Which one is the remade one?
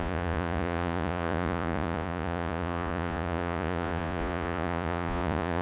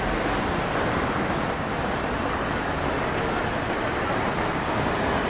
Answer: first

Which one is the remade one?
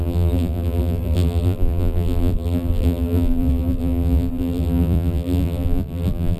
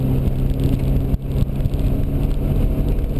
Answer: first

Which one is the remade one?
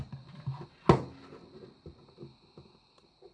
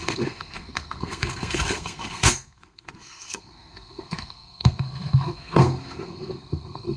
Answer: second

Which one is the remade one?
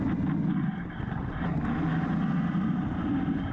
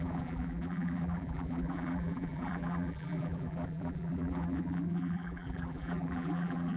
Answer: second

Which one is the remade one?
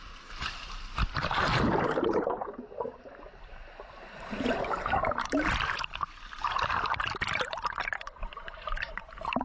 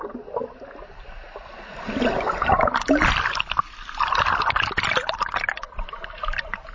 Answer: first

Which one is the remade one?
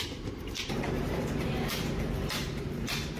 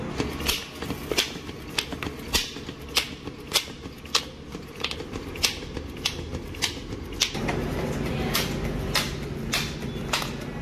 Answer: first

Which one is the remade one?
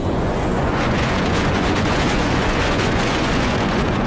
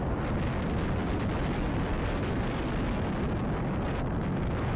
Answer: first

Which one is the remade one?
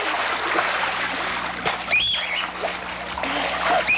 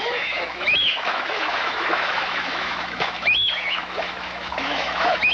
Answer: second